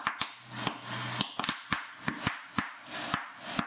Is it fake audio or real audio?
real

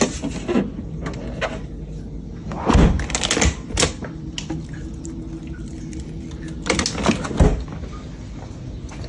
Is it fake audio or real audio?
real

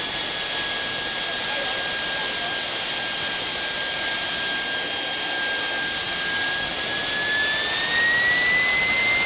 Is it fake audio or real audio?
real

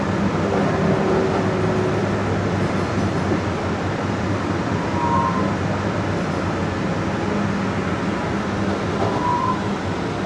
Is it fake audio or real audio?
real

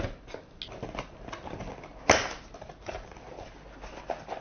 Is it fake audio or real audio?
real